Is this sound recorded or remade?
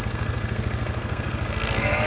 remade